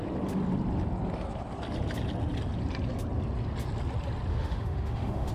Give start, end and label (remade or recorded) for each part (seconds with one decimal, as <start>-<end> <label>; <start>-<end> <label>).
0.0-4.3 recorded; 4.3-5.3 remade